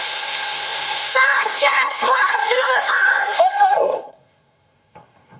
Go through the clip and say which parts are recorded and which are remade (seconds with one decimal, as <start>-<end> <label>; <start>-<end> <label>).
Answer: 0.0-5.4 remade